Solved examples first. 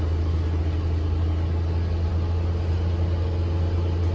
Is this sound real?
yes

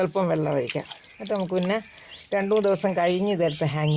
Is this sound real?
yes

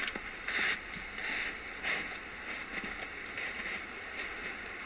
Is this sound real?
yes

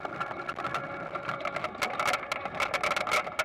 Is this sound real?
yes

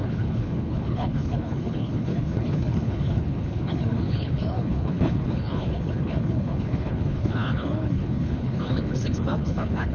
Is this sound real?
no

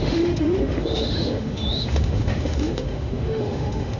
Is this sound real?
no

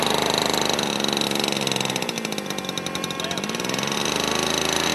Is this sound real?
yes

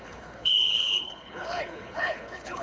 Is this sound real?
no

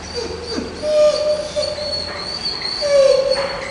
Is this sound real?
yes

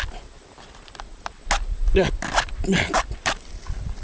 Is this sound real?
yes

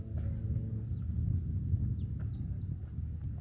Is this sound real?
yes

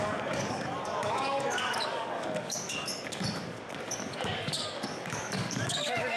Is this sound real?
no